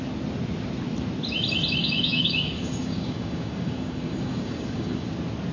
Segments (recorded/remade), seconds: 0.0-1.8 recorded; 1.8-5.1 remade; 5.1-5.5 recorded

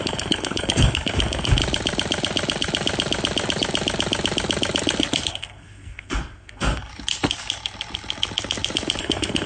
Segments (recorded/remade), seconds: 0.0-1.6 remade; 1.6-5.3 recorded; 5.3-6.9 remade; 6.9-9.0 recorded; 9.0-9.5 remade

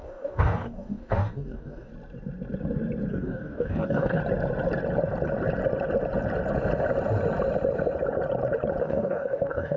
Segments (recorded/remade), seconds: 0.0-1.9 remade; 1.9-3.1 recorded; 3.1-4.2 remade; 4.2-8.8 recorded; 8.8-9.8 remade

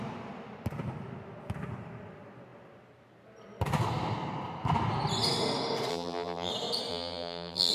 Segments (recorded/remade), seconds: 0.0-5.9 recorded; 5.9-6.5 remade; 6.5-6.9 recorded; 6.9-7.7 remade

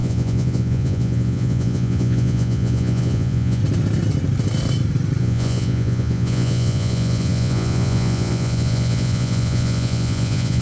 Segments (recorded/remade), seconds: 0.0-3.6 remade; 3.6-5.2 recorded; 5.2-10.6 remade

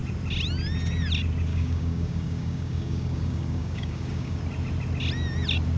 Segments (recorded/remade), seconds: 0.0-1.5 recorded; 1.5-4.4 remade; 4.4-5.8 recorded

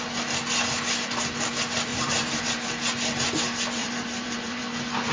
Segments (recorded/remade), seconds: 0.0-1.9 recorded; 1.9-2.4 remade; 2.4-3.8 recorded; 3.8-4.6 remade; 4.6-5.1 recorded

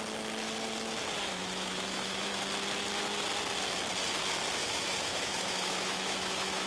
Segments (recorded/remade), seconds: 0.0-1.3 recorded; 1.3-2.4 remade; 2.4-4.6 recorded; 4.6-6.7 remade